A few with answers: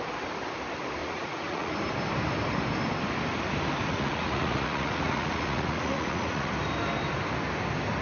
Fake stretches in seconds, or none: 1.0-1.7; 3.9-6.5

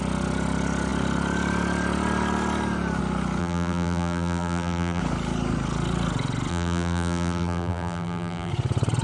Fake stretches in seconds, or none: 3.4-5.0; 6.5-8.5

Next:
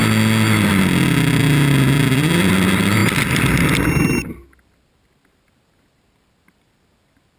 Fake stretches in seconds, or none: none

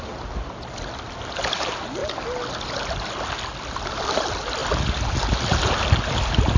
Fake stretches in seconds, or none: none